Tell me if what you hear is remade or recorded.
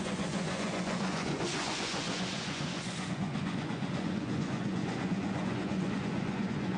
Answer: remade